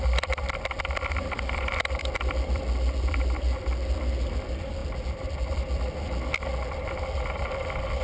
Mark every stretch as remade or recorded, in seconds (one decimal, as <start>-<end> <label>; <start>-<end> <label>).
0.0-8.0 recorded